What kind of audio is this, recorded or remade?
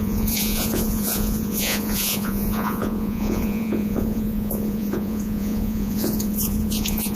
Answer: remade